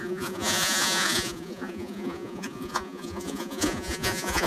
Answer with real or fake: fake